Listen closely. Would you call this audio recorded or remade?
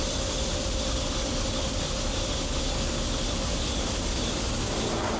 recorded